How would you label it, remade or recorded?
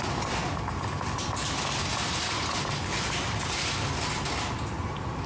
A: recorded